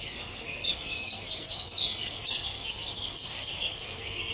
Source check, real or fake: fake